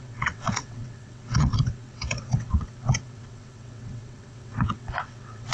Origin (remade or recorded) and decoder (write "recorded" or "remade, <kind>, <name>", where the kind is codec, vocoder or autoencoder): remade, vocoder, WaveNeXt